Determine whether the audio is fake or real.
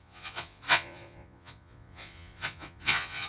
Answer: fake